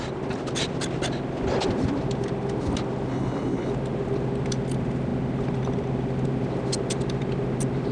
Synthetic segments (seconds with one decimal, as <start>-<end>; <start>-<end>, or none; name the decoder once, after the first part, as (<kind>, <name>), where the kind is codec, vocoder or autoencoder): 3.1-3.7 (codec, HILCodec)